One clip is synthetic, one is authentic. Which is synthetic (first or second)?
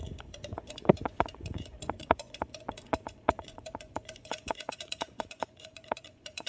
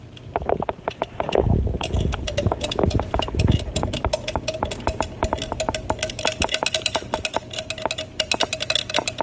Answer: first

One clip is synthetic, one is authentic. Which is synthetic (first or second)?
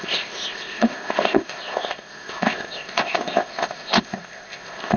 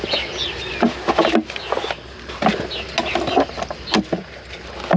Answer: first